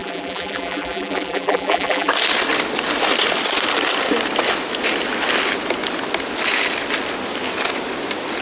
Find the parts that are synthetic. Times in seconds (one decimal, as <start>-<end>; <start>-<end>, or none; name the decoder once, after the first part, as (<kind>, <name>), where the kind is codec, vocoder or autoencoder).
0.0-2.1 (vocoder, BigVGAN v2)